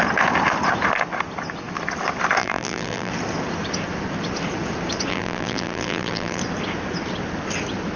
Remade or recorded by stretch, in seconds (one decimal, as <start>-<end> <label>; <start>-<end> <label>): 0.0-2.4 recorded; 2.4-3.1 remade; 3.1-5.1 recorded; 5.1-6.4 remade; 6.4-8.0 recorded